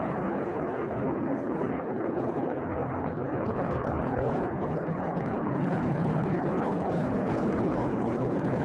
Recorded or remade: remade